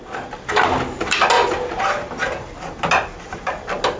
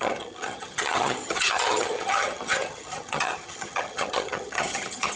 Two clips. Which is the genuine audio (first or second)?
first